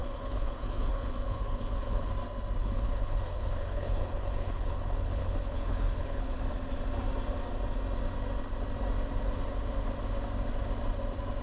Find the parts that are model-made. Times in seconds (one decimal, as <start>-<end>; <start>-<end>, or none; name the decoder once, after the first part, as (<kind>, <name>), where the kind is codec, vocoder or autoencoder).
0.0-2.1 (codec, HILCodec); 2.6-6.4